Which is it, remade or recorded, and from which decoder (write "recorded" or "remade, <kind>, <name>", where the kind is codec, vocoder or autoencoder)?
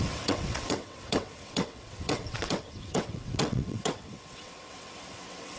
remade, vocoder, WaveNeXt